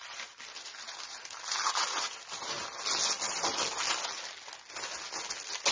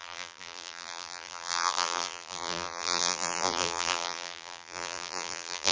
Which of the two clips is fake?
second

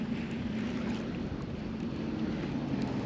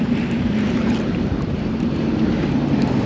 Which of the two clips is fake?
second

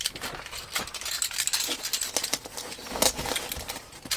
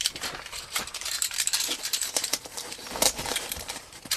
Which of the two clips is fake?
second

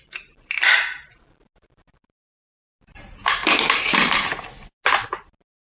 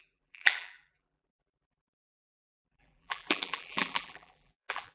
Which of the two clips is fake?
second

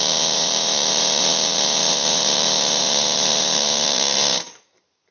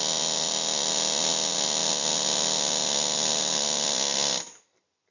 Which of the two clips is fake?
first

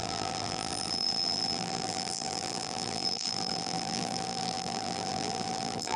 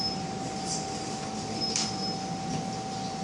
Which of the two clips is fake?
first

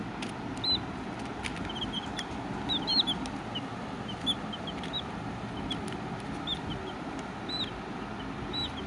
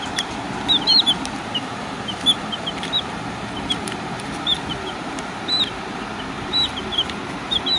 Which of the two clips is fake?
second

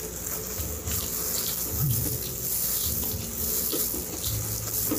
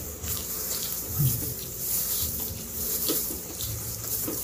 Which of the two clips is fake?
second